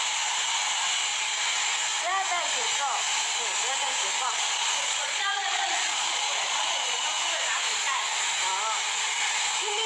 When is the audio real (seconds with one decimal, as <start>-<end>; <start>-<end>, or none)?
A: 0.0-4.2; 7.0-9.9